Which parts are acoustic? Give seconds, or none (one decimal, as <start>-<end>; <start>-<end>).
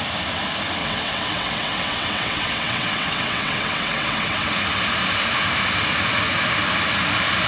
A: 0.0-0.8; 4.5-7.5